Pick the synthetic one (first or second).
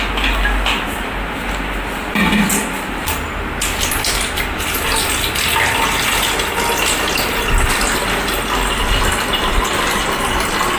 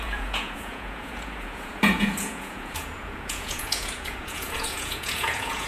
second